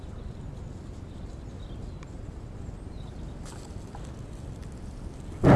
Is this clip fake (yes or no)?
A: no